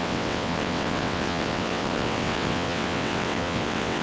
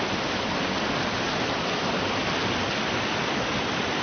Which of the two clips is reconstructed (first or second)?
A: first